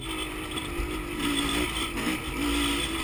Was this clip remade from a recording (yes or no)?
no